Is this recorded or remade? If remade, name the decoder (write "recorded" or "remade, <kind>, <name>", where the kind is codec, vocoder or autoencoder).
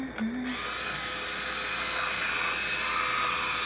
recorded